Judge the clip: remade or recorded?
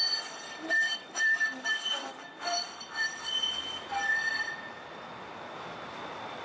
remade